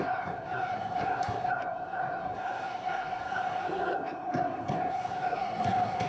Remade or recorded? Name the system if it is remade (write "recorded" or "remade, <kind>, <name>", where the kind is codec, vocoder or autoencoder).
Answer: remade, codec, SNAC